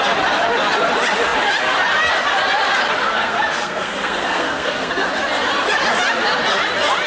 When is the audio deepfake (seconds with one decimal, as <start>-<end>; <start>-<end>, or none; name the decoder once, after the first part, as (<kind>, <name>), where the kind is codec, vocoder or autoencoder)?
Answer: 3.1-5.1 (codec, SNAC)